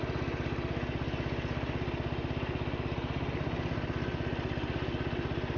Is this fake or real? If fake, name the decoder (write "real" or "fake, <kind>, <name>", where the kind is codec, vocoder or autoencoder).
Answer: real